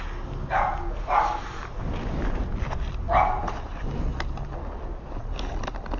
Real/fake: real